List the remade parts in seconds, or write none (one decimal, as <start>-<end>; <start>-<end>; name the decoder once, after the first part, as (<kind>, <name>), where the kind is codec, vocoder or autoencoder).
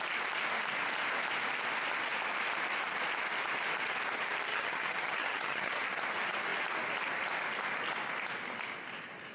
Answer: 4.5-5.7 (vocoder, HiFi-GAN)